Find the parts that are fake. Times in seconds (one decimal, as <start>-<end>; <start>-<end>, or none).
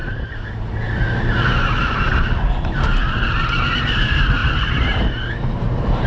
3.7-6.1